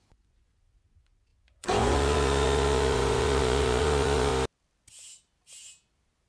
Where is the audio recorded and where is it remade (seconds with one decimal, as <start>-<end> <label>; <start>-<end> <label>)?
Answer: 0.0-4.3 remade; 4.3-6.3 recorded